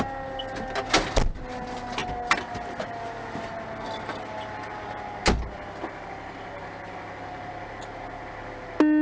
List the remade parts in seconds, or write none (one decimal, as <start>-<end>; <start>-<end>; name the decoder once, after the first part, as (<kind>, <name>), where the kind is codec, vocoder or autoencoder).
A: none